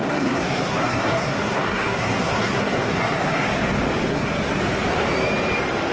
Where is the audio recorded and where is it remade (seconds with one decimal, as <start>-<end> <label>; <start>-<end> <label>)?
0.0-3.5 remade; 3.5-4.1 recorded; 4.1-4.6 remade; 4.6-5.9 recorded